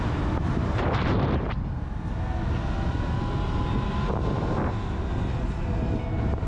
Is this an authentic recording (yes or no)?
yes